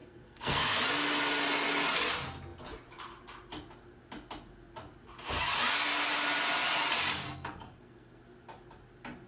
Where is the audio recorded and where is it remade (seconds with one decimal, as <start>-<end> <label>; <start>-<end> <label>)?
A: 0.0-0.8 remade; 0.8-7.2 recorded; 7.2-8.2 remade; 8.2-9.3 recorded